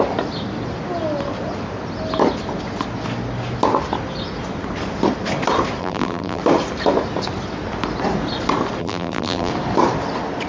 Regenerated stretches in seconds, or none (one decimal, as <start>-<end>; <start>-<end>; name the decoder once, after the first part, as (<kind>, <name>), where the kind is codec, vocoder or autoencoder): 5.8-6.4 (vocoder, BigVGAN v2); 8.8-9.5